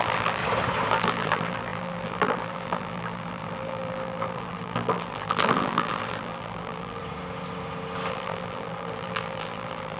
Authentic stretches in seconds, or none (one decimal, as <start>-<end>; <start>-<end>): 0.4-0.9; 7.0-8.1